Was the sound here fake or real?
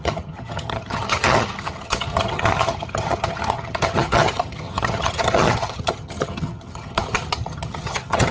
fake